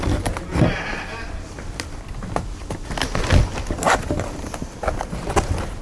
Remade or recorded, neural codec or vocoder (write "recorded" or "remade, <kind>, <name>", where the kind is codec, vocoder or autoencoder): remade, vocoder, BigVGAN v2